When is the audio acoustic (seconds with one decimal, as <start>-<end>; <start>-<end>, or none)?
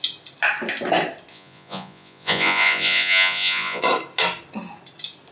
0.0-1.3; 3.8-5.3